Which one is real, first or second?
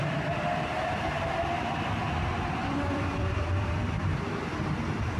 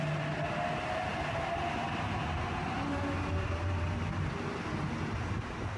second